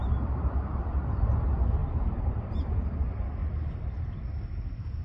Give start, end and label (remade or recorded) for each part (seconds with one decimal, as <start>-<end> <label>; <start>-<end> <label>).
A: 0.0-1.1 remade; 1.1-1.8 recorded; 1.8-2.7 remade; 2.7-3.4 recorded; 3.4-4.0 remade; 4.0-5.0 recorded